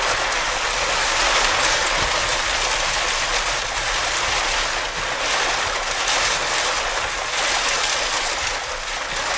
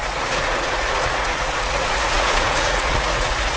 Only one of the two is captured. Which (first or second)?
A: first